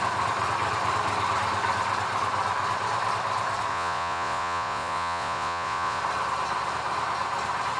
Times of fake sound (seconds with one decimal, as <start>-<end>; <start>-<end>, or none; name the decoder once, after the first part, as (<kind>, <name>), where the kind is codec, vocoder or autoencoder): 3.7-6.0 (vocoder, Vocos)